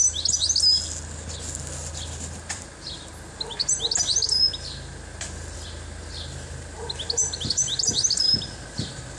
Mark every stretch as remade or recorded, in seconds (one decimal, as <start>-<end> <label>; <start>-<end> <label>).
0.0-0.6 remade; 0.6-7.2 recorded; 7.2-9.2 remade